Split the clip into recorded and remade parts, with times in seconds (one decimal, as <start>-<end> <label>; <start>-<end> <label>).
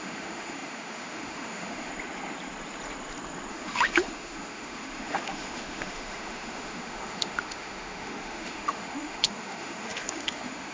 0.0-1.9 remade; 1.9-3.5 recorded; 3.5-10.7 remade